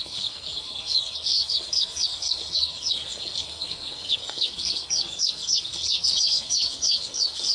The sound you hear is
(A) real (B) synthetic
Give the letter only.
B